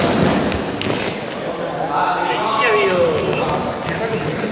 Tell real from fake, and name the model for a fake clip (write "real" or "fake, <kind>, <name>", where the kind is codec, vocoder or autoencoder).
real